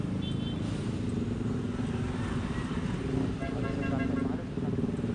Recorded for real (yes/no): yes